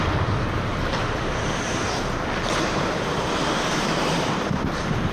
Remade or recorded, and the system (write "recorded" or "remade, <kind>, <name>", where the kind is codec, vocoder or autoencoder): remade, vocoder, BigVGAN v2